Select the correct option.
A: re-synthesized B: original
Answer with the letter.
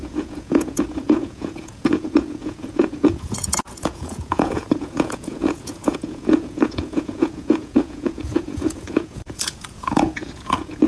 A